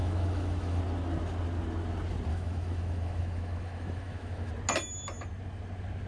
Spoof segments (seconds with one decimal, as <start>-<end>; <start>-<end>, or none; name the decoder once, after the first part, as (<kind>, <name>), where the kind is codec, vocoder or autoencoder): 0.0-0.8 (autoencoder, DAC-VAE); 2.3-4.5